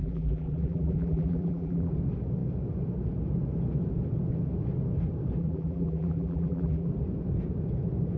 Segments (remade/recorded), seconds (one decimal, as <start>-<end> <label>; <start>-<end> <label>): 0.0-1.9 remade; 1.9-5.4 recorded; 5.4-6.9 remade; 6.9-8.2 recorded